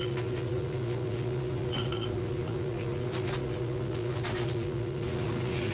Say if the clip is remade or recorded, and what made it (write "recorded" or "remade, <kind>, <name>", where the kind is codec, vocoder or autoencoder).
remade, vocoder, Vocos